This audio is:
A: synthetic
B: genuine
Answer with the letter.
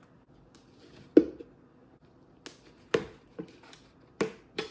B